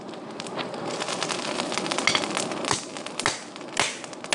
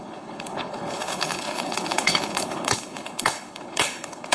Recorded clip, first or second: first